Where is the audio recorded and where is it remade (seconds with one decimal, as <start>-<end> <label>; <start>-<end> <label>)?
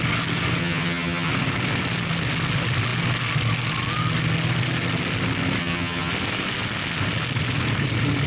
0.0-0.6 recorded; 0.6-1.3 remade; 1.3-5.6 recorded; 5.6-6.1 remade; 6.1-8.3 recorded